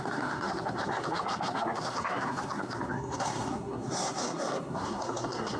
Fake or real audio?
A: fake